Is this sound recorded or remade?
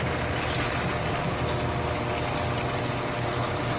recorded